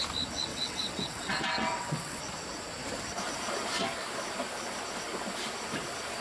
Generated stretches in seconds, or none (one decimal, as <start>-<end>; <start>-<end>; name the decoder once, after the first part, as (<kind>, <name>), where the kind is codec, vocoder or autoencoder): 0.5-2.2 (vocoder, WaveNeXt)